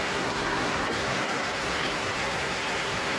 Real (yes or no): no